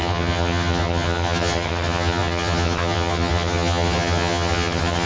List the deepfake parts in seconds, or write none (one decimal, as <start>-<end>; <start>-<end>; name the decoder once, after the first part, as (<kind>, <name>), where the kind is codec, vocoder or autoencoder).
0.0-5.1 (vocoder, HiFi-GAN)